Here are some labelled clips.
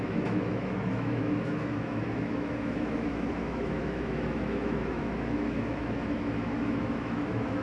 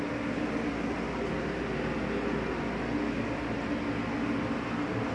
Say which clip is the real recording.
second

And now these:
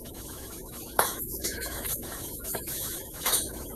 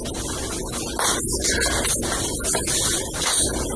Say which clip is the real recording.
second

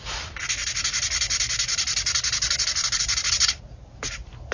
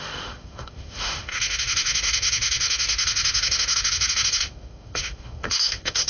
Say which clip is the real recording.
first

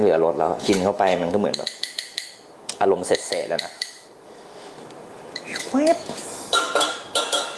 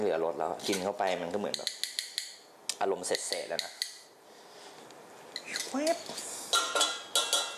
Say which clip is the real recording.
second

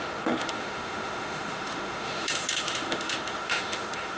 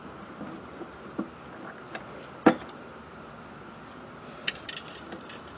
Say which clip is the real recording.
second